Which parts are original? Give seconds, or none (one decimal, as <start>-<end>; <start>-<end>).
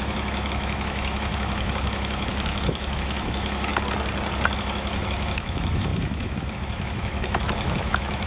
3.7-4.6